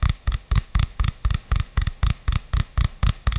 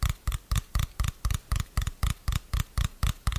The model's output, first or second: first